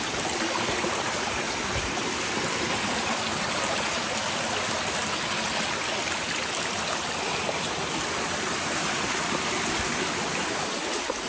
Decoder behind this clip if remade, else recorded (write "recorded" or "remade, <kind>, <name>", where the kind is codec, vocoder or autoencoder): recorded